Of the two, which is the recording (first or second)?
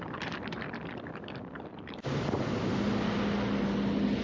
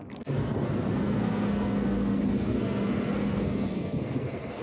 first